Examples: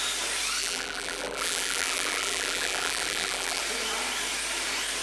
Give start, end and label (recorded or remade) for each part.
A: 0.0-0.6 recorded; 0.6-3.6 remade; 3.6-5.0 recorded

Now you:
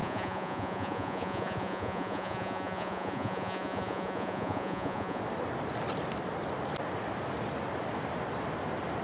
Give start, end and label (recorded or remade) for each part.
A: 0.0-5.2 remade; 5.2-9.0 recorded

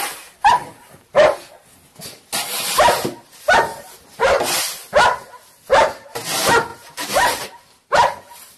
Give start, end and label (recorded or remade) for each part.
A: 0.0-3.7 recorded; 3.7-4.4 remade; 4.4-6.7 recorded; 6.7-7.7 remade; 7.7-8.6 recorded

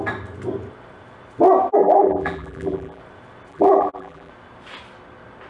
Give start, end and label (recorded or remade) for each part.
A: 0.0-1.8 recorded; 1.8-3.0 remade; 3.0-3.5 recorded; 3.5-4.3 remade; 4.3-5.5 recorded

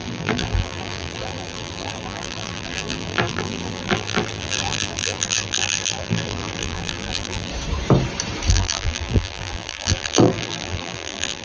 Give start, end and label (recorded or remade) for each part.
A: 0.0-7.5 remade; 7.5-8.5 recorded; 8.5-11.4 remade